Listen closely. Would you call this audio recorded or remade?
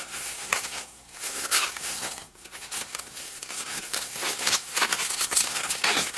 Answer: remade